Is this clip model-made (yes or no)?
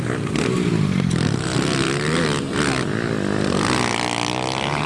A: no